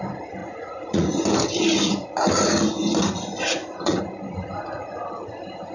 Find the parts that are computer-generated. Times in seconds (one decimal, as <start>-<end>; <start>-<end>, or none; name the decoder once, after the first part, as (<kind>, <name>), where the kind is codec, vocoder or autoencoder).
0.4-1.2 (vocoder, Vocos); 3.5-4.0